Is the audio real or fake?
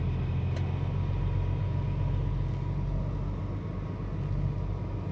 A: real